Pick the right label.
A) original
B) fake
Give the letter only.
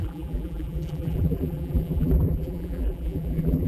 B